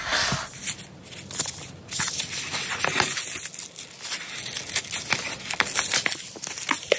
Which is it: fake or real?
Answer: real